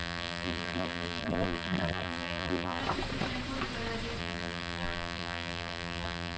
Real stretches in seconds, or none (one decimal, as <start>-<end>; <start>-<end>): 2.8-4.2